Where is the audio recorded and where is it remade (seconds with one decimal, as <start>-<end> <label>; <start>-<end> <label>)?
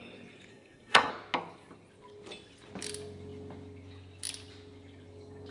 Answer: 0.0-0.5 recorded; 0.5-1.1 remade; 1.1-5.5 recorded